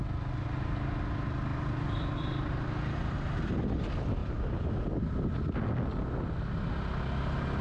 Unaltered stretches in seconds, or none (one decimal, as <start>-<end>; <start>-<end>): 0.0-1.5; 2.7-7.6

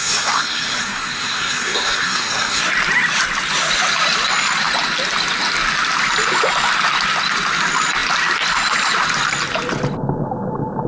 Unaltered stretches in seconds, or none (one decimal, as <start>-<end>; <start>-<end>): 2.6-10.9